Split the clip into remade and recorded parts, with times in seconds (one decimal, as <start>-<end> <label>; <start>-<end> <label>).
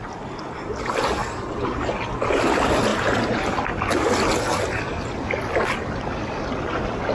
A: 0.0-1.2 recorded; 1.2-1.9 remade; 1.9-2.9 recorded; 2.9-3.6 remade; 3.6-7.1 recorded